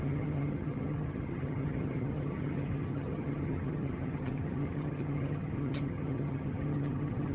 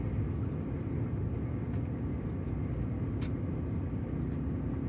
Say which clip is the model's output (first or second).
first